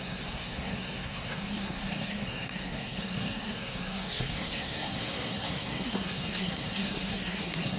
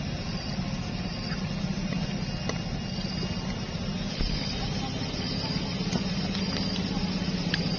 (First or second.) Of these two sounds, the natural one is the second